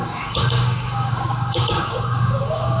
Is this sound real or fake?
fake